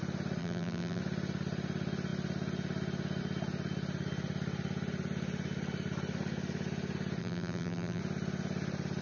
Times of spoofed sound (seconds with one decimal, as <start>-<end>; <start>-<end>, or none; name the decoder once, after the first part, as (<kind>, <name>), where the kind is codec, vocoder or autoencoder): 0.4-1.0 (vocoder, BigVGAN v2); 7.2-8.0

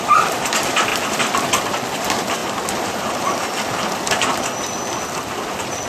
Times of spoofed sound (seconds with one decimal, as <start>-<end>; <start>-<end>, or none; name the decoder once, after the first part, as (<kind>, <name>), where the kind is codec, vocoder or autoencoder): 0.0-5.9 (vocoder, BigVGAN v2)

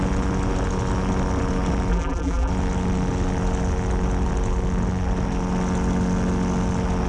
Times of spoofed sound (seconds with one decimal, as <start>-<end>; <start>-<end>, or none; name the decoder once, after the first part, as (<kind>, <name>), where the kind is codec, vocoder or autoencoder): 1.9-2.5 (vocoder, BigVGAN v2)

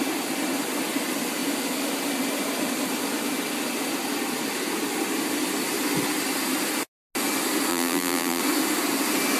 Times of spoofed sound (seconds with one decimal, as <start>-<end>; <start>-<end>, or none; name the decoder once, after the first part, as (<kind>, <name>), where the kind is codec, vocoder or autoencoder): 7.7-8.4 (vocoder, BigVGAN v2)

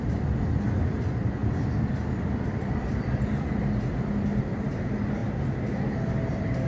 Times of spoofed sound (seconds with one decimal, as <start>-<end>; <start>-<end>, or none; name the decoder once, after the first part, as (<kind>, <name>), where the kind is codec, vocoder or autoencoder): 0.0-5.2 (vocoder, BigVGAN v2); 6.1-6.7

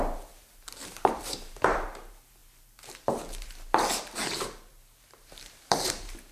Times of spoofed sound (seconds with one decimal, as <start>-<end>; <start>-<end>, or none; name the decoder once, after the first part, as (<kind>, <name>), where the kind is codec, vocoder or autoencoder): 0.0-6.3 (vocoder, BigVGAN v2)

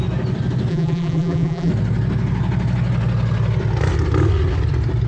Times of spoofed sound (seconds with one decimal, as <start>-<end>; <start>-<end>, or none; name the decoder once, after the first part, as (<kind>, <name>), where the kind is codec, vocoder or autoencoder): 0.7-1.7 (vocoder, BigVGAN v2)

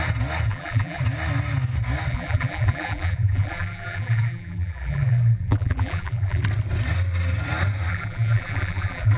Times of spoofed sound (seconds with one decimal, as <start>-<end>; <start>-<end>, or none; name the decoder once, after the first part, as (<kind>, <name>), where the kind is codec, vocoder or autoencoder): 0.5-1.0 (vocoder, BigVGAN v2); 2.1-6.4; 7.9-9.2